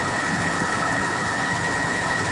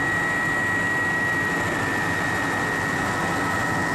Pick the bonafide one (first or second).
second